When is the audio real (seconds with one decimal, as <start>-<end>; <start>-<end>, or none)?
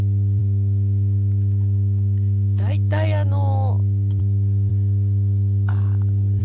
0.0-0.4; 4.2-6.4